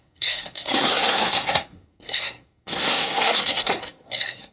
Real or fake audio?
fake